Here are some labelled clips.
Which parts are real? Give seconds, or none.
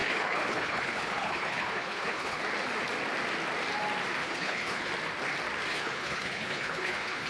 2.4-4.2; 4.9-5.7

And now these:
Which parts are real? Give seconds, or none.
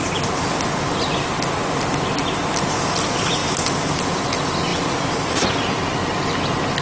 0.0-6.8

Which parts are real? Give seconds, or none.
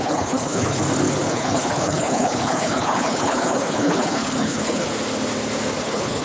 0.8-1.3; 4.9-5.8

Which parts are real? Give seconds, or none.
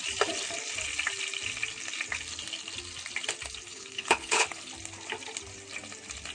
0.0-3.7; 4.7-6.3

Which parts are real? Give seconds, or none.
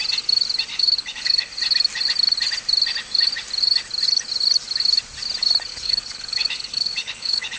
0.0-0.7; 1.5-5.7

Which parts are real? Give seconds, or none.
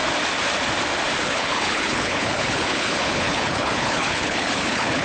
0.0-1.2